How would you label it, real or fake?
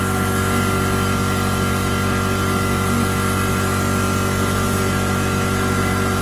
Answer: real